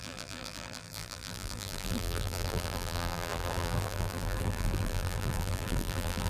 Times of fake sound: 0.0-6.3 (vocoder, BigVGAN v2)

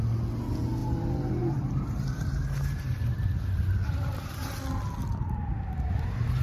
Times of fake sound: 0.8-4.6 (vocoder, BigVGAN v2)

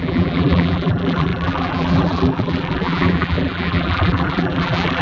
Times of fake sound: 0.0-5.0 (vocoder, BigVGAN v2)

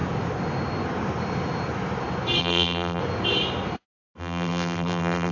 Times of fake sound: 2.4-3.0 (vocoder, BigVGAN v2); 4.2-5.3

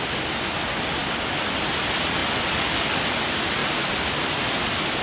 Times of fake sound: 3.6-4.2 (vocoder, BigVGAN v2)

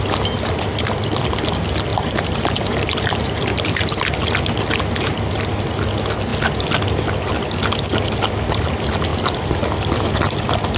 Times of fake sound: 1.9-3.9 (vocoder, BigVGAN v2)